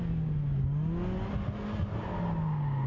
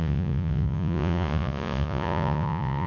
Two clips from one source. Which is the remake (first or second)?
second